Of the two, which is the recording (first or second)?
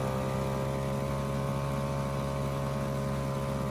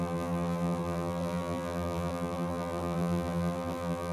first